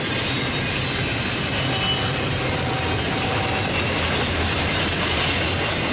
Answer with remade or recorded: recorded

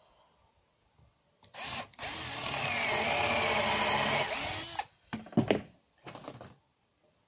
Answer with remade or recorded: recorded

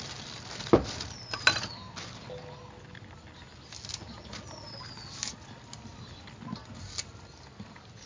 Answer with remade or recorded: recorded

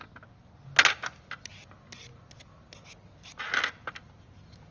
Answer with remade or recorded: recorded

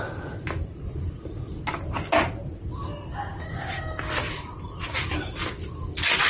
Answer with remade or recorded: recorded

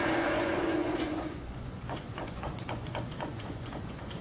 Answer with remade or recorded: remade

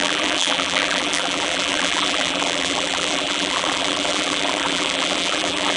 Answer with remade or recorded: remade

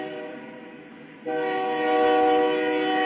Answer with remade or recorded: recorded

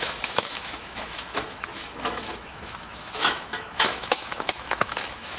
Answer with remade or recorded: remade